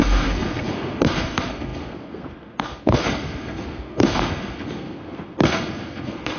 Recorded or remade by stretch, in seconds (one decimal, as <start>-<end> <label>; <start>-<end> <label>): 0.0-6.4 remade